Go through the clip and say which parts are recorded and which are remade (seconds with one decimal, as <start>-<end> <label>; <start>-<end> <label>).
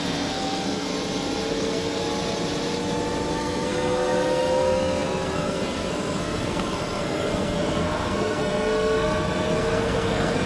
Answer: 0.0-0.9 remade; 0.9-1.5 recorded; 1.5-2.0 remade; 2.0-3.3 recorded; 3.3-10.5 remade